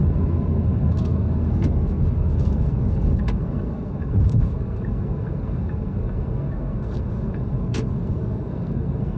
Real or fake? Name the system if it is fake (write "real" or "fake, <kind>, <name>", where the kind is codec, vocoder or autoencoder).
fake, codec, SNAC